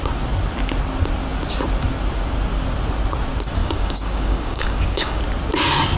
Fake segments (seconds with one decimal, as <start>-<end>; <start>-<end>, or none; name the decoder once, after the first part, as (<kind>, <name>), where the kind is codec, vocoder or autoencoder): 3.6-5.2 (codec, DAC)

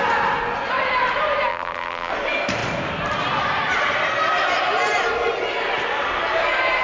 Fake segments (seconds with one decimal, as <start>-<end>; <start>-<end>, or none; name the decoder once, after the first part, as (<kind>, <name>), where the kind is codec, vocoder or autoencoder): 1.5-2.1 (vocoder, BigVGAN v2)

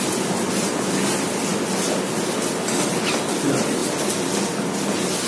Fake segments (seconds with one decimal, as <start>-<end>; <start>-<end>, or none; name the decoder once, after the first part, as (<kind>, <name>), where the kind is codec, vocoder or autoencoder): none

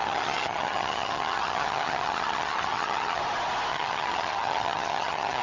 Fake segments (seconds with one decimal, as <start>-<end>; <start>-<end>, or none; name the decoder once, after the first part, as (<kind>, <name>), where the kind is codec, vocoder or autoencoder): 0.0-3.2 (vocoder, HiFi-GAN); 3.7-5.4

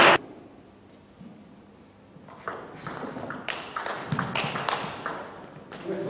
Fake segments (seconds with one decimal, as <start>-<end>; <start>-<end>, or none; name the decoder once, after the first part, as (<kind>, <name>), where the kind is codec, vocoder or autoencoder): none